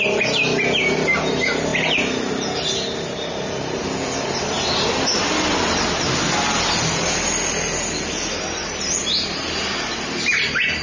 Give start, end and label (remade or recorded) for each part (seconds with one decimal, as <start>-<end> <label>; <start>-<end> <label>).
0.0-10.8 recorded